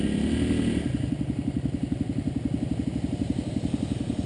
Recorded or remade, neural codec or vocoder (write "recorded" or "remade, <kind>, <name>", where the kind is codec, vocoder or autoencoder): recorded